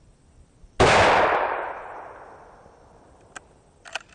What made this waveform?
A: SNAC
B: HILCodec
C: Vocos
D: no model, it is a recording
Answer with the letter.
D